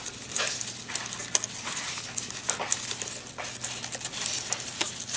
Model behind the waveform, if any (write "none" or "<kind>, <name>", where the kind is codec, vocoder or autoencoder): none